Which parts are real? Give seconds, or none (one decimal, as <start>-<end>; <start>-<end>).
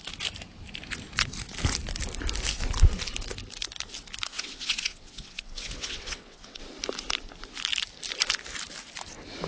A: 0.0-4.3; 6.6-9.5